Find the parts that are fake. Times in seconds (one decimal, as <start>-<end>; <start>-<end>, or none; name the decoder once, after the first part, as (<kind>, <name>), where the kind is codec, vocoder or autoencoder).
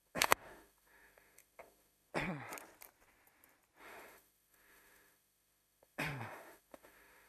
0.0-2.1 (autoencoder, DAC-VAE); 3.8-7.3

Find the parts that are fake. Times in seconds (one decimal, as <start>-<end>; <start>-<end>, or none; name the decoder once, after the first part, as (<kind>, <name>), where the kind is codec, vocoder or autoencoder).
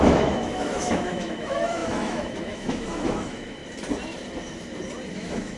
0.0-3.6 (autoencoder, DAC-VAE); 5.1-5.6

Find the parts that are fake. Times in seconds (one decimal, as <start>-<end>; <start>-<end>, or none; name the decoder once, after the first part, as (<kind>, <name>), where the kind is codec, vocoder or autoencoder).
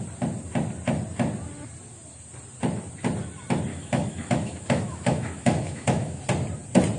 3.7-6.2 (autoencoder, DAC-VAE)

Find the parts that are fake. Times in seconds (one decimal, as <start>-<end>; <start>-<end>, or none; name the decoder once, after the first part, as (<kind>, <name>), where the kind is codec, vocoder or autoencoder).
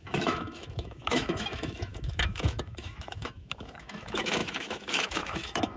0.0-5.8 (autoencoder, DAC-VAE)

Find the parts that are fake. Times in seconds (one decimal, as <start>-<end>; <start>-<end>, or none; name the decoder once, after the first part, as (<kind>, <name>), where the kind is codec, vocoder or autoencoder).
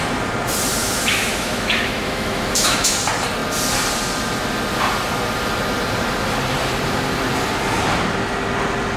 0.8-3.0 (autoencoder, DAC-VAE)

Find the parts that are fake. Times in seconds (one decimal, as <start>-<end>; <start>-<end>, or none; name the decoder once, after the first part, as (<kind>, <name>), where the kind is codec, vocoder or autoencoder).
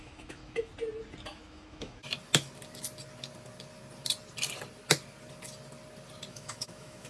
0.0-0.7 (autoencoder, DAC-VAE); 1.3-2.0; 6.3-7.1